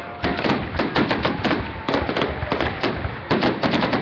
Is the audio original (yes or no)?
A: no